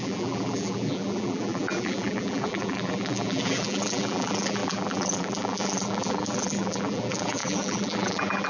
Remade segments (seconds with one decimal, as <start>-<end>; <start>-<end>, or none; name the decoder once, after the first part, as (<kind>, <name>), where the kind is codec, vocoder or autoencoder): 0.0-8.5 (vocoder, BigVGAN v2)